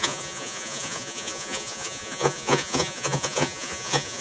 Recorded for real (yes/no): no